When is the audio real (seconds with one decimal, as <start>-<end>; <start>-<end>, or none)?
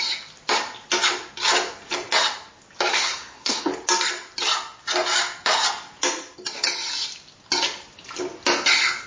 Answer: 0.0-2.9; 3.7-9.1